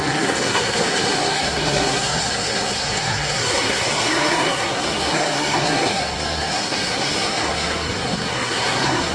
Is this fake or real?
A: fake